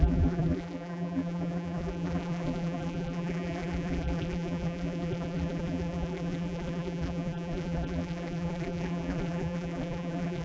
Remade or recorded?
remade